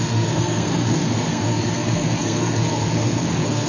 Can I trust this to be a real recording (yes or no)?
no